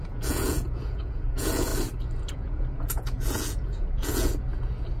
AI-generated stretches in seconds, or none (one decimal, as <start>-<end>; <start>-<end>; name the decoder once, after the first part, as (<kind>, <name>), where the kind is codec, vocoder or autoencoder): 0.0-1.7 (vocoder, Vocos); 2.3-4.5